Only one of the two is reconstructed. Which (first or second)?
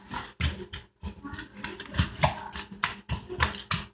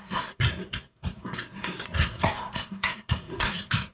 second